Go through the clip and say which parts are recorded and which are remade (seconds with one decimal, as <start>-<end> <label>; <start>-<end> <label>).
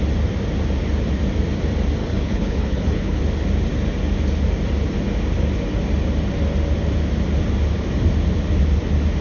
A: 0.0-2.0 recorded; 2.0-3.2 remade; 3.2-9.2 recorded